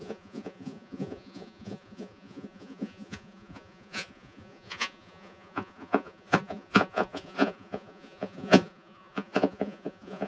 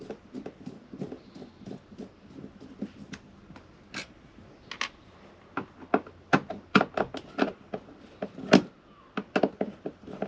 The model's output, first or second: first